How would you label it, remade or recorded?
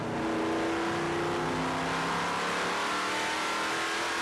recorded